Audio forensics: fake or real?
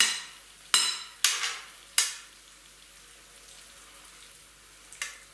real